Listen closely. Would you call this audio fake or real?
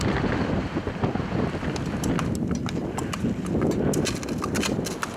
real